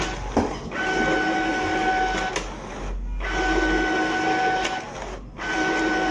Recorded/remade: recorded